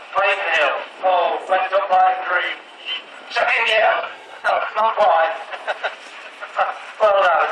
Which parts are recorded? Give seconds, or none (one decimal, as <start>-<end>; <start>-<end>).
0.0-3.4; 4.9-7.5